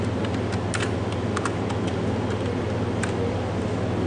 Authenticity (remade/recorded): recorded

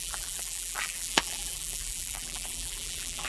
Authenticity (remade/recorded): remade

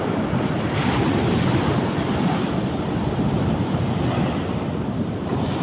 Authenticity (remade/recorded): remade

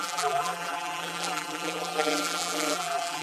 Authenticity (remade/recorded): remade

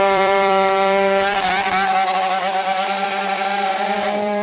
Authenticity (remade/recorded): remade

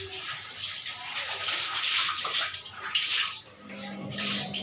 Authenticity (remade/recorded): remade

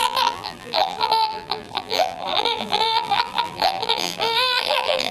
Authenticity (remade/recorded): remade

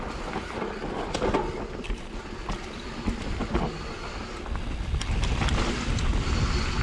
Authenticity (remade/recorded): recorded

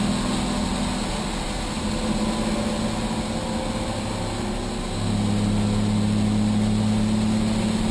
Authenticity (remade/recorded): recorded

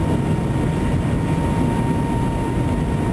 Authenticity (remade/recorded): recorded